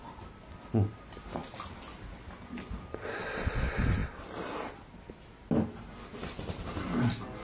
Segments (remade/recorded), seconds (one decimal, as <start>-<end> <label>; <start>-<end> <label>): 0.0-7.4 recorded